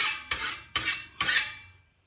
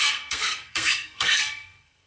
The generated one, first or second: second